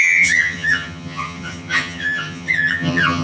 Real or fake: fake